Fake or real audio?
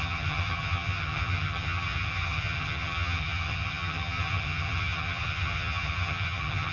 fake